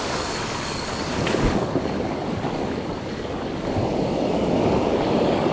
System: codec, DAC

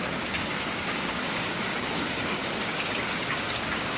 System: codec, DAC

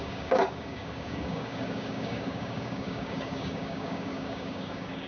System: codec, DAC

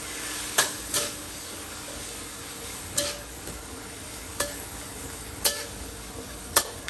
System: codec, DAC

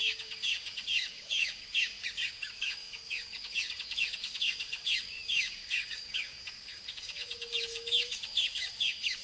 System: codec, DAC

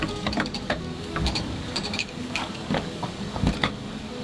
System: codec, DAC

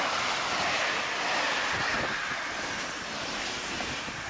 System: none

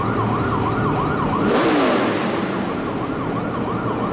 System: none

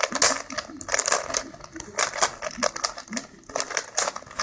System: none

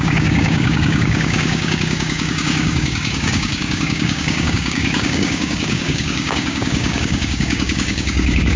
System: codec, DAC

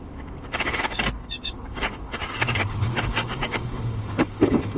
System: codec, DAC